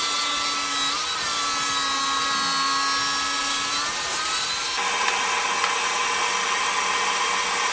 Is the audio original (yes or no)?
yes